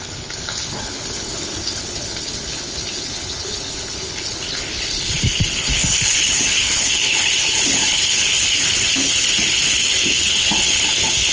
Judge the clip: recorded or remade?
remade